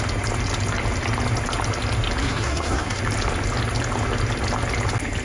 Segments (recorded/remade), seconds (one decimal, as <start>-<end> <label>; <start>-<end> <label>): 0.0-2.2 recorded; 2.2-3.0 remade; 3.0-5.2 recorded